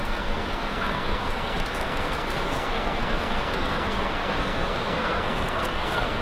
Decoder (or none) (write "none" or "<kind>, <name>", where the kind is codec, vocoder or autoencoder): codec, SNAC